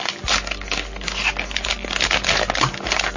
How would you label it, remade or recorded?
recorded